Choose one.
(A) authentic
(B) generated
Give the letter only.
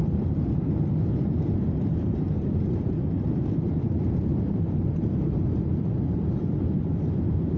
B